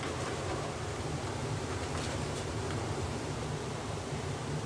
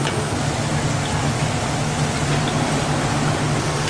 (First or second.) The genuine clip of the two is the second